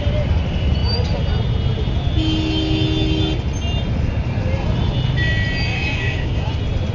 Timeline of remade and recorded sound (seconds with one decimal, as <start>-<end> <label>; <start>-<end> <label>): 0.0-5.7 recorded; 5.7-6.5 remade; 6.5-6.9 recorded